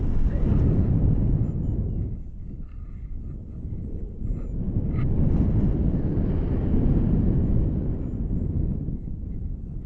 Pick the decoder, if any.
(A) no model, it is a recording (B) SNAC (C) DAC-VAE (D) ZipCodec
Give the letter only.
A